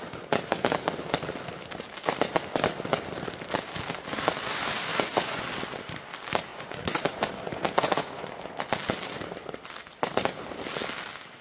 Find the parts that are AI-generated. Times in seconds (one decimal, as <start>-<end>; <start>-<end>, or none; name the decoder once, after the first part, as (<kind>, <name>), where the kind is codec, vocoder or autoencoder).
4.9-5.4 (vocoder, Vocos); 6.5-8.6